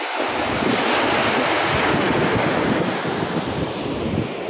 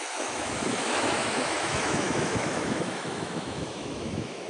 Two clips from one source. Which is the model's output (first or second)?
second